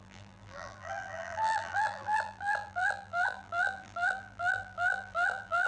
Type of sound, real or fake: fake